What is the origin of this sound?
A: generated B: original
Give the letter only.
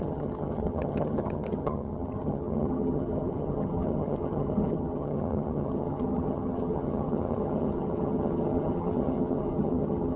A